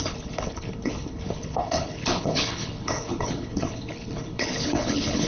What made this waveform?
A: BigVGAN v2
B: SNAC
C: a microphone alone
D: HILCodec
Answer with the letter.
D